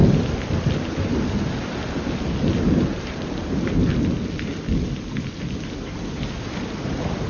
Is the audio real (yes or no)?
yes